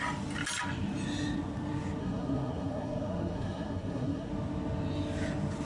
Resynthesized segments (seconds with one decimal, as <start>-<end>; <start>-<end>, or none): 2.0-4.3